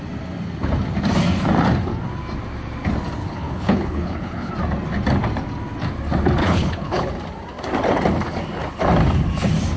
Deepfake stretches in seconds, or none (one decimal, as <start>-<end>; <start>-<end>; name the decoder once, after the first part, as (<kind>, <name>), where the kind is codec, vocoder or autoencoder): 3.2-4.5 (codec, HILCodec); 6.4-7.1